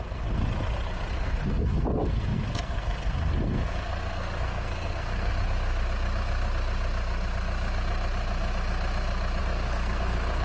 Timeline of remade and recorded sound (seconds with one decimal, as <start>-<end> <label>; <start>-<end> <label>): 0.0-0.4 remade; 0.4-1.1 recorded; 1.1-5.3 remade; 5.3-9.4 recorded; 9.4-10.4 remade